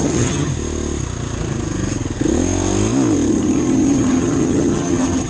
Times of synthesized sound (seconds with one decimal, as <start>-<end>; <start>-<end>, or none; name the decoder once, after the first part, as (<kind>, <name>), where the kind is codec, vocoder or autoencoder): 0.0-0.5 (vocoder, HiFi-GAN); 3.3-5.3